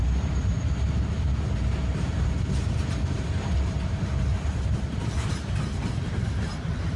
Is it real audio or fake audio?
fake